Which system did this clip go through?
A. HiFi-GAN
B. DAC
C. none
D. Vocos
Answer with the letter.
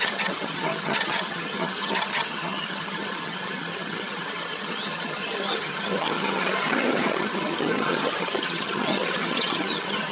A